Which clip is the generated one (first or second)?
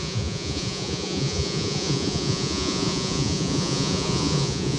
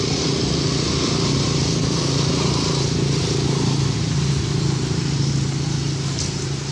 first